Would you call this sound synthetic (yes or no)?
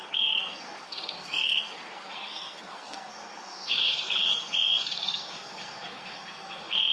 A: yes